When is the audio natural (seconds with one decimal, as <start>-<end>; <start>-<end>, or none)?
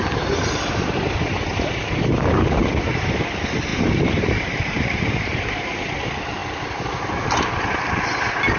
0.0-3.7; 5.7-8.6